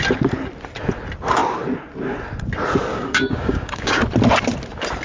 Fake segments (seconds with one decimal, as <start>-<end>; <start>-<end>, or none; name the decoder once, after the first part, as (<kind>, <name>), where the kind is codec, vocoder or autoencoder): 2.9-4.0 (codec, DAC)